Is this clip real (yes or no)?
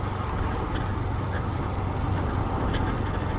yes